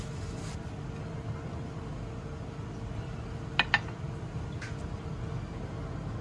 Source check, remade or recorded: recorded